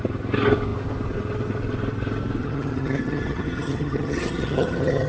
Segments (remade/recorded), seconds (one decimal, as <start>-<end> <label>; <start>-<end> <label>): 0.0-2.4 recorded; 2.4-5.1 remade